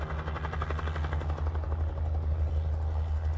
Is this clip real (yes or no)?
yes